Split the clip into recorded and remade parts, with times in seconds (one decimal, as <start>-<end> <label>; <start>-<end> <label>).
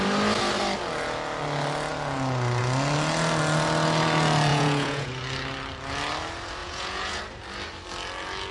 0.0-4.5 recorded; 4.5-5.1 remade; 5.1-6.6 recorded; 6.6-7.2 remade; 7.2-8.5 recorded